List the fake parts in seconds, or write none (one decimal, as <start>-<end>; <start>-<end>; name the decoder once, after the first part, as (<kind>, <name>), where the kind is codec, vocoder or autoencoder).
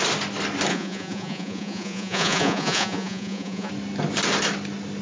0.7-3.7 (vocoder, Vocos)